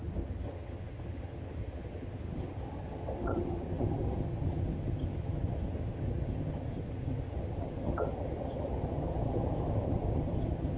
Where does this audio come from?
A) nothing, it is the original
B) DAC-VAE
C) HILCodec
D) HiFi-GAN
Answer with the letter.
D